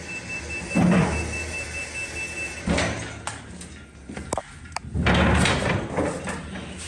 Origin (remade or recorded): recorded